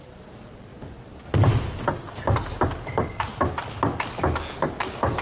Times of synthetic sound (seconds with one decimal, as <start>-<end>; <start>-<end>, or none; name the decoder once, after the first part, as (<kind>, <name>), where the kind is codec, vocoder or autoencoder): none